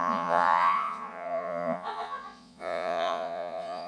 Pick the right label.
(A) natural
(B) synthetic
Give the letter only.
B